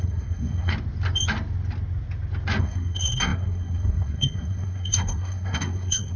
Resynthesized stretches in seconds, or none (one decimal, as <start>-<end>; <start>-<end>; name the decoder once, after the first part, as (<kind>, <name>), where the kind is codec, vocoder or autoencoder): 0.0-0.7 (codec, SNAC); 2.6-6.2